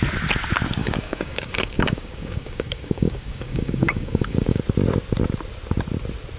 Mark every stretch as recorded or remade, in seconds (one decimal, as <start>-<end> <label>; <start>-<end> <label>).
0.0-0.8 recorded; 0.8-4.6 remade; 4.6-6.4 recorded

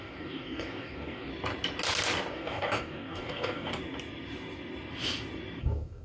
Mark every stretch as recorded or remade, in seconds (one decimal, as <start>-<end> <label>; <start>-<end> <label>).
0.0-1.3 remade; 1.3-2.3 recorded; 2.3-3.7 remade; 3.7-5.6 recorded; 5.6-6.0 remade

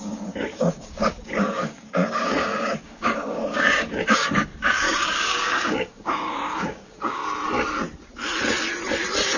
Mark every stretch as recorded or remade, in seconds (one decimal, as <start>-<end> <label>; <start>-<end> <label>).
0.0-7.2 remade; 7.2-9.4 recorded

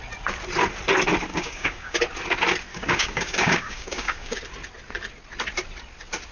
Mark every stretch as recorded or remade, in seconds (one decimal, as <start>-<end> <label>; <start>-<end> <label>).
0.0-1.3 recorded; 1.3-2.0 remade; 2.0-2.7 recorded; 2.7-4.4 remade; 4.4-6.3 recorded

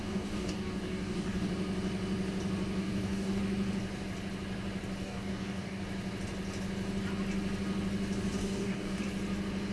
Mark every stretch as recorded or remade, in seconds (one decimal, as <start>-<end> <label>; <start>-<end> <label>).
0.0-1.5 remade; 1.5-2.8 recorded; 2.8-3.4 remade; 3.4-5.0 recorded; 5.0-5.8 remade; 5.8-8.4 recorded; 8.4-9.0 remade; 9.0-9.7 recorded

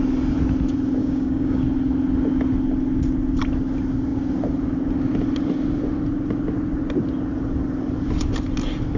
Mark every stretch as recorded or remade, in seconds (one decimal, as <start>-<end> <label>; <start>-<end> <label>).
0.0-1.0 recorded; 1.0-1.6 remade; 1.6-9.0 recorded

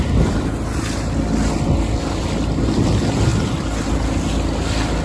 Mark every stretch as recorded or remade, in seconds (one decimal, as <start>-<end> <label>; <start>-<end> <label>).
0.0-5.0 recorded